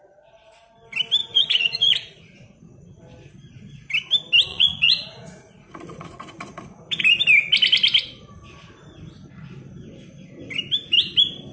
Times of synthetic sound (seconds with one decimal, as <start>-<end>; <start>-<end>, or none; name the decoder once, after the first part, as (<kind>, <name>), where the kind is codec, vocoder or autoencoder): 1.2-3.0 (vocoder, Vocos); 4.5-7.0